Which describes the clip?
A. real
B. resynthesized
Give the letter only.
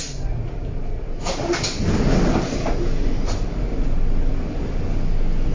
A